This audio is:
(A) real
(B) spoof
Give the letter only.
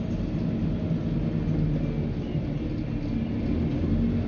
A